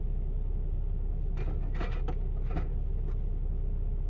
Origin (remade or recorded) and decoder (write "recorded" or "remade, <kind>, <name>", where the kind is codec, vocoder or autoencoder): recorded